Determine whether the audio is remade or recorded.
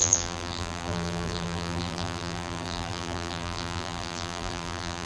remade